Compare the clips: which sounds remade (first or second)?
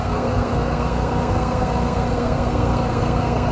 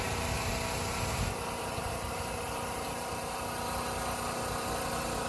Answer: first